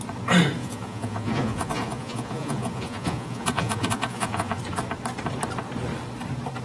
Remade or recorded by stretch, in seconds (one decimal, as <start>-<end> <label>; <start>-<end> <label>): 0.0-0.6 recorded; 0.6-4.6 remade; 4.6-6.6 recorded

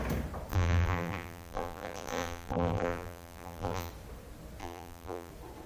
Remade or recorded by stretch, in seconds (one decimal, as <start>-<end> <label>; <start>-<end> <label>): 0.0-0.5 recorded; 0.5-3.9 remade; 3.9-4.6 recorded; 4.6-5.3 remade; 5.3-5.7 recorded

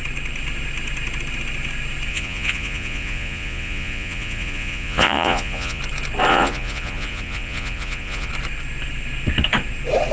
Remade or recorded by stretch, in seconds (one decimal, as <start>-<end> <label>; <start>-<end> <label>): 0.0-2.1 recorded; 2.1-5.8 remade; 5.8-6.3 recorded; 6.3-8.3 remade; 8.3-10.1 recorded